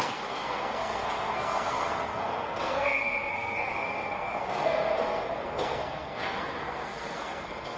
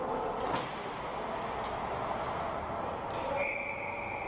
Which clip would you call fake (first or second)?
first